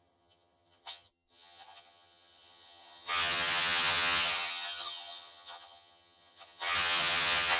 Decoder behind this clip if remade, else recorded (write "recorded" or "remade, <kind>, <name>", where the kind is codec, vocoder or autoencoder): remade, vocoder, HiFi-GAN